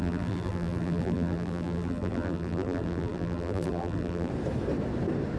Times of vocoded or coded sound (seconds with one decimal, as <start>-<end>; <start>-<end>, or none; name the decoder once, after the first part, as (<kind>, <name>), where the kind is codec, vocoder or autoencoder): 0.0-4.3 (vocoder, BigVGAN v2)